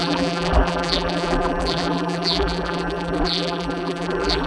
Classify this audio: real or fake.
fake